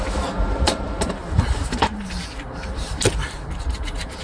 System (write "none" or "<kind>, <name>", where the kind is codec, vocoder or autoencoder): vocoder, BigVGAN v2